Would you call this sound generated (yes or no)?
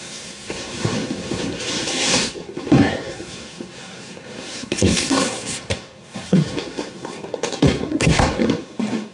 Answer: yes